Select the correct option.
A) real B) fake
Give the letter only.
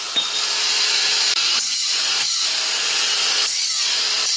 B